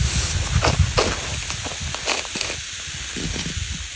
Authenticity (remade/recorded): recorded